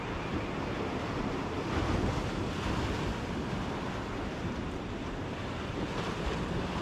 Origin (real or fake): real